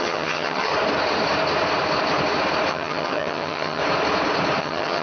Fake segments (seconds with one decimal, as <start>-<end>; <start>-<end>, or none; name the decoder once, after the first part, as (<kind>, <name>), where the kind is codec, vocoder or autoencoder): 0.0-0.7 (vocoder, HiFi-GAN); 2.7-3.8; 4.6-5.0